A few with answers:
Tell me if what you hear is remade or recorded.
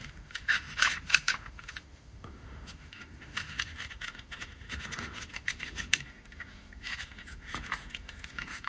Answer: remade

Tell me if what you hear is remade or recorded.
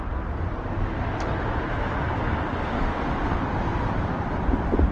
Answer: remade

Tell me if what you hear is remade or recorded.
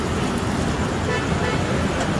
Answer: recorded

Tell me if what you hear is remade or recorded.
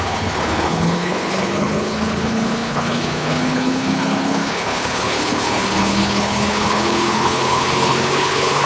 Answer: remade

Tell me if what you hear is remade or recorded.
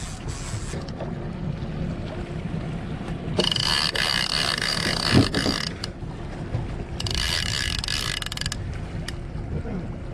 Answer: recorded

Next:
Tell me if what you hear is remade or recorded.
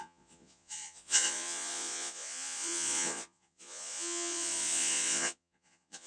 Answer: remade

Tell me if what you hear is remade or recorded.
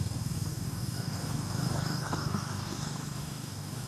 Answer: remade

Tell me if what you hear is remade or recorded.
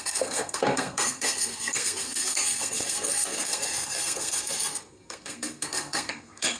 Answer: remade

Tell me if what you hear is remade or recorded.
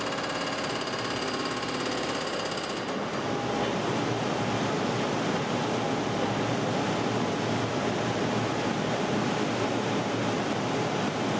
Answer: recorded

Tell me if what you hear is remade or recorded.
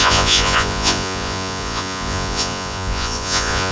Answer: remade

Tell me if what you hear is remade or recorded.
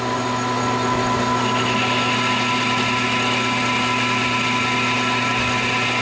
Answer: recorded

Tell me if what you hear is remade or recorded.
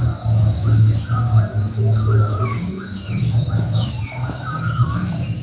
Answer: remade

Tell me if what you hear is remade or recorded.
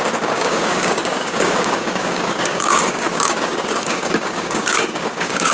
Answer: remade